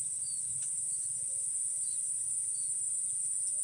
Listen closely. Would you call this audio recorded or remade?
recorded